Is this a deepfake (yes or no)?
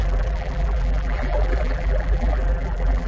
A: yes